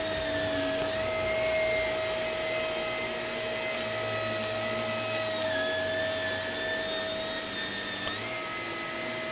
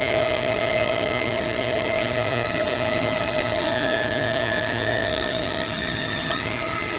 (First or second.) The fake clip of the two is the second